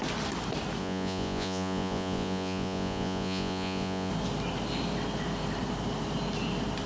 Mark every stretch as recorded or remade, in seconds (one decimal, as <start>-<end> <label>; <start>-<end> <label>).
0.0-0.8 recorded; 0.8-4.1 remade; 4.1-6.9 recorded